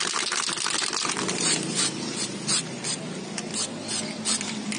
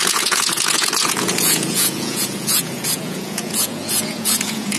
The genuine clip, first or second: first